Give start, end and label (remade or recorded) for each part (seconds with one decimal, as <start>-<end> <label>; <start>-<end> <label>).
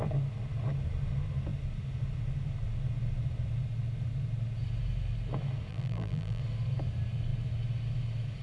0.0-5.7 recorded; 5.7-6.4 remade; 6.4-8.4 recorded